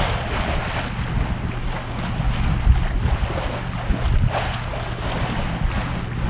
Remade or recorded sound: recorded